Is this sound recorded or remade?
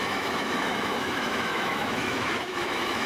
remade